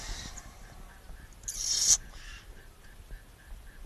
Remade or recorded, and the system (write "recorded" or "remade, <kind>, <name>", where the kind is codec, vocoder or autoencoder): recorded